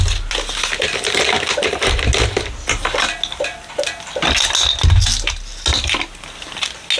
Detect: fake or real real